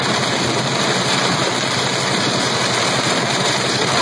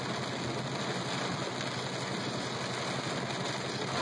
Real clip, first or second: second